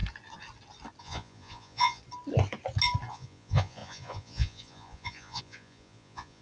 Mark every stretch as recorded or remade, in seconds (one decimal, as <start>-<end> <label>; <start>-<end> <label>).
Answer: 0.0-1.0 recorded; 1.0-2.0 remade; 2.0-3.1 recorded; 3.1-6.4 remade